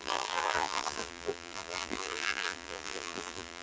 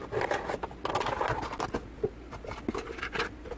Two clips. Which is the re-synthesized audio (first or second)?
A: first